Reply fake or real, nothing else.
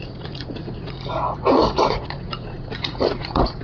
fake